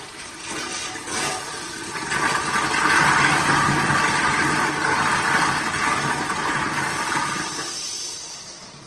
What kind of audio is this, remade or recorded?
recorded